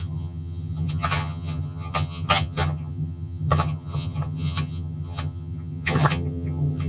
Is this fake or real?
fake